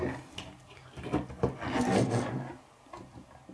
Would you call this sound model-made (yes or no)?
no